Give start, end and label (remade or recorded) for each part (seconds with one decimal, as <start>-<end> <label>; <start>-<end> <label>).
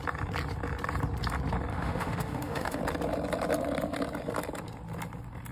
0.0-1.7 recorded; 1.7-2.8 remade; 2.8-5.5 recorded